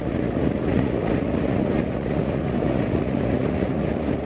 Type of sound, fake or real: fake